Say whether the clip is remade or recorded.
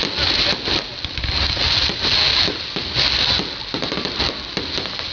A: recorded